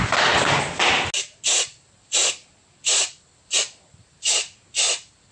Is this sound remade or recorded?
recorded